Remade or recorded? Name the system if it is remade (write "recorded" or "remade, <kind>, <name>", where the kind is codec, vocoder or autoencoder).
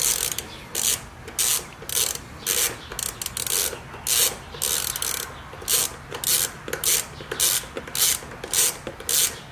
recorded